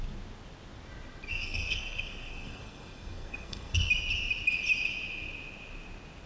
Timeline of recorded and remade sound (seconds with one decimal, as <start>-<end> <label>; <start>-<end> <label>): 0.0-1.3 recorded; 1.3-3.9 remade; 3.9-6.3 recorded